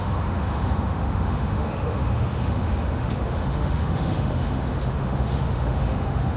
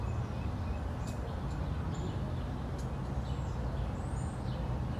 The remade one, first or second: first